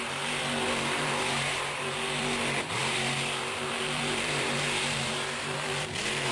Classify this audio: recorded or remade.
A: remade